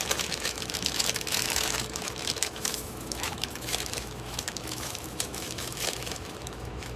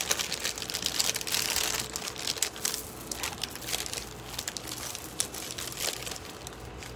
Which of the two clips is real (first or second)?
second